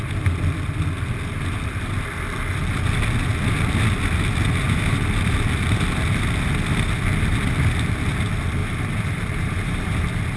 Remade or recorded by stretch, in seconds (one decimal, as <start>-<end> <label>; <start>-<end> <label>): 0.0-8.6 recorded; 8.6-10.0 remade; 10.0-10.4 recorded